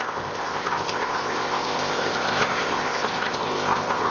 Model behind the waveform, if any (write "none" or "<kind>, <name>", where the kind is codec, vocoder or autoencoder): codec, ZipCodec